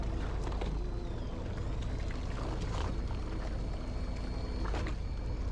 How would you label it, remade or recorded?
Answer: recorded